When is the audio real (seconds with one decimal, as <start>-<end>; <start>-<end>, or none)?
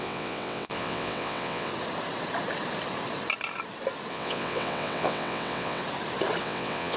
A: 1.7-4.1; 5.8-6.4